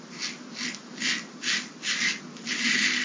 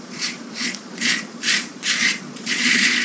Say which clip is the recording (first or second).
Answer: first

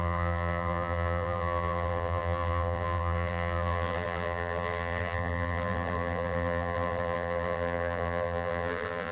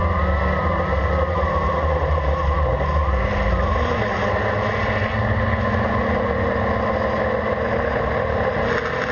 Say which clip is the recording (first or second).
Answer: second